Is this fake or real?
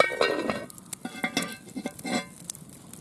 real